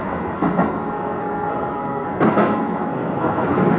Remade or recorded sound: remade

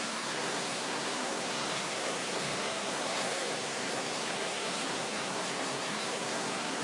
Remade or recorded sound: remade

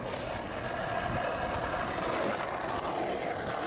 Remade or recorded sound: recorded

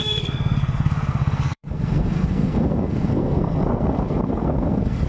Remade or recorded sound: remade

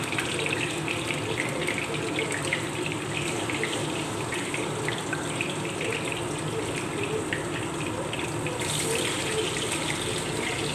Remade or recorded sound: recorded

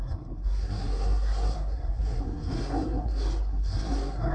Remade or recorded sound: remade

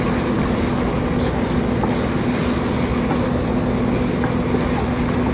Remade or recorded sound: recorded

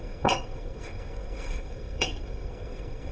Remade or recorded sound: remade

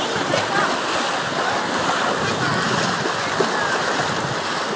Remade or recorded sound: recorded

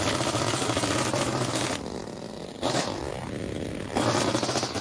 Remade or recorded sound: recorded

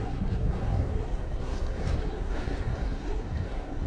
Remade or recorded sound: remade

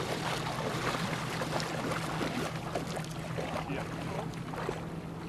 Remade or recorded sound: recorded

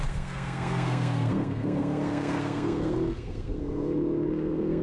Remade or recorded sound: remade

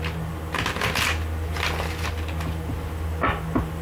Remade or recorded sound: recorded